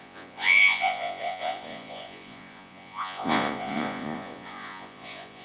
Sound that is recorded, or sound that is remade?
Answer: remade